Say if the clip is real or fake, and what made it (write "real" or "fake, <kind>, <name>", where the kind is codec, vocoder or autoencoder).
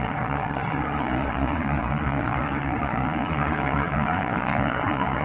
fake, vocoder, Vocos